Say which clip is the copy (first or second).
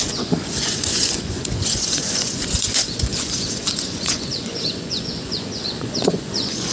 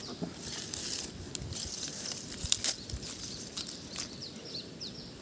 first